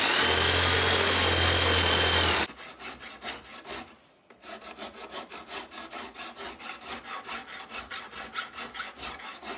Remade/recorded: recorded